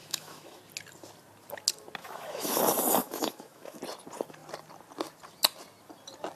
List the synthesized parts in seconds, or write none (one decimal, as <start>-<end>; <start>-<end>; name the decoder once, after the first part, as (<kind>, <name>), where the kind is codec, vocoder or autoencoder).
0.0-0.6 (autoencoder, DAC-VAE); 2.0-2.6; 3.0-3.8